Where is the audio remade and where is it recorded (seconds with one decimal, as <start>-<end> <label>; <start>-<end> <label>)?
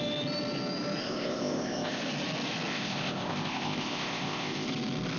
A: 0.0-1.0 recorded; 1.0-2.0 remade; 2.0-2.7 recorded; 2.7-4.7 remade; 4.7-5.2 recorded